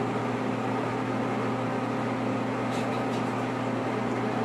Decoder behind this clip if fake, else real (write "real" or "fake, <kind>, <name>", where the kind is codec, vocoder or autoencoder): real